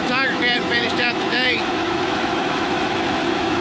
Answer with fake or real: fake